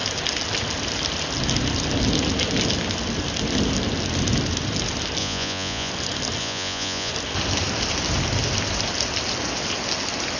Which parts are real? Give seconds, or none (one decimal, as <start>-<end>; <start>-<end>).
0.0-5.2; 5.9-6.4; 7.1-10.4